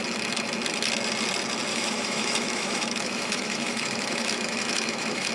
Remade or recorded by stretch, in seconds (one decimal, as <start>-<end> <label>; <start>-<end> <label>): 0.0-1.7 recorded; 1.7-5.3 remade